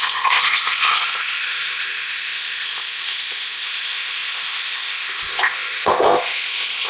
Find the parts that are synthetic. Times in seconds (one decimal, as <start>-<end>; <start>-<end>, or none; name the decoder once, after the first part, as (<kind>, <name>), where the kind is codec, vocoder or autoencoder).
0.0-6.9 (codec, ZipCodec)